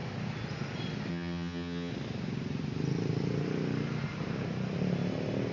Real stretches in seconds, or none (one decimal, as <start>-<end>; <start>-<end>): 0.0-1.1; 1.9-5.5